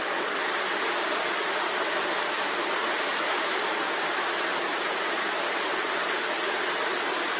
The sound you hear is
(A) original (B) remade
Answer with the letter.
A